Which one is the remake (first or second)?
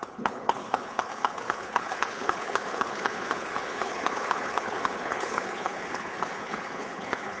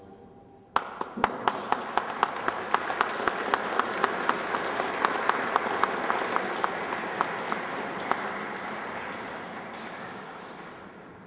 first